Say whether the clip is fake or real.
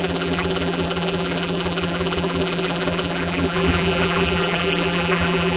fake